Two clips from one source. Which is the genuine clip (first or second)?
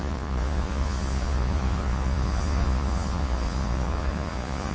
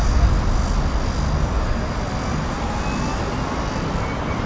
second